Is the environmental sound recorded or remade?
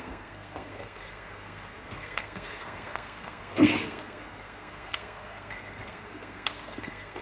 remade